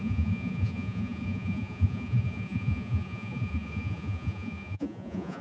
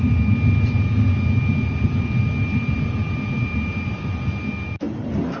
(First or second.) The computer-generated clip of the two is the first